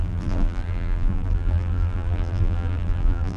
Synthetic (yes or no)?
yes